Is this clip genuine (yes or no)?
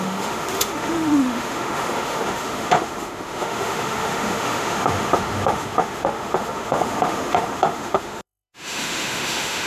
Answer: no